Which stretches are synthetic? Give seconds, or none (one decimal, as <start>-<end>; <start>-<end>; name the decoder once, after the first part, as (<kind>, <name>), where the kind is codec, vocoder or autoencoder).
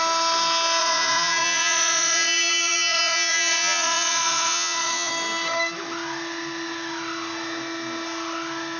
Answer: 0.8-5.1 (vocoder, Vocos)